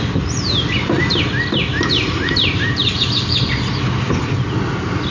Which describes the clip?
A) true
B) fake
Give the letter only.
A